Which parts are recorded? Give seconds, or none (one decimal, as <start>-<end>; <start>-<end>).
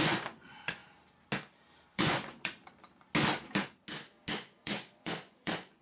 0.8-1.9; 2.6-4.3